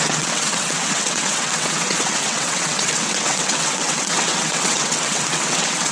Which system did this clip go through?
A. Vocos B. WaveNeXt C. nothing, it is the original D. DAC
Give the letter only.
B